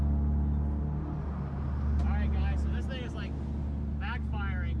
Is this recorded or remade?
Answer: recorded